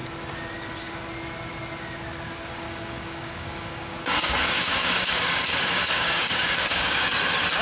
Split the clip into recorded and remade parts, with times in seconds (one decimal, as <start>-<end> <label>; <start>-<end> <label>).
0.0-2.5 recorded; 2.5-7.1 remade; 7.1-7.6 recorded

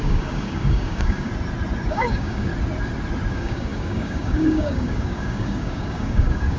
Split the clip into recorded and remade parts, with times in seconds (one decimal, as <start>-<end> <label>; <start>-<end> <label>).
0.0-1.3 remade; 1.3-1.9 recorded; 1.9-2.5 remade; 2.5-3.3 recorded; 3.3-6.6 remade

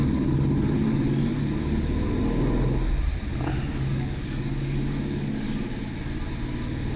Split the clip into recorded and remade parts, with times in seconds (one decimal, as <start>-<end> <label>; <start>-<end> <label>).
0.0-3.9 recorded; 3.9-5.5 remade; 5.5-7.0 recorded

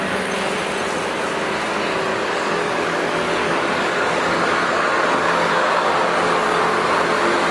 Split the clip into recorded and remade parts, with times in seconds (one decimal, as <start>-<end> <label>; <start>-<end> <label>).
0.0-2.1 recorded; 2.1-6.6 remade; 6.6-7.5 recorded

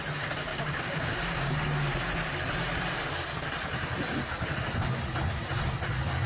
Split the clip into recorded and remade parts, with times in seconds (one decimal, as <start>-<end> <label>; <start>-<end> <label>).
0.0-0.5 recorded; 0.5-1.5 remade; 1.5-6.3 recorded

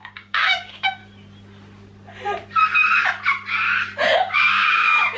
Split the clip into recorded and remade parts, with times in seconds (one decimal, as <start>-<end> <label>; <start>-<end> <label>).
0.0-1.0 remade; 1.0-4.1 recorded; 4.1-5.2 remade

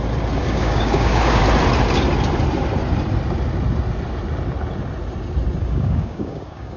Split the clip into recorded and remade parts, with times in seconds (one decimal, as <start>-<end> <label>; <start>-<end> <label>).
0.0-0.4 recorded; 0.4-1.4 remade; 1.4-5.6 recorded; 5.6-6.8 remade

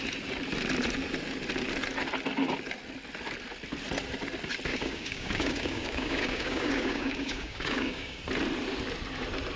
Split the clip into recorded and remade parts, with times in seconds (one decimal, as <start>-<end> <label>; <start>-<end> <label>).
0.0-4.7 recorded; 4.7-8.2 remade; 8.2-9.6 recorded